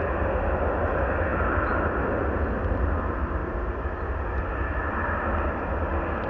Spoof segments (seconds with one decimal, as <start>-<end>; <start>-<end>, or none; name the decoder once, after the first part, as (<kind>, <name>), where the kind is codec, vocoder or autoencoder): none